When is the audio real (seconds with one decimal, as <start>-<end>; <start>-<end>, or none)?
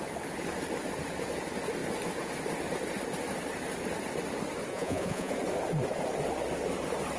0.0-4.7; 5.3-7.2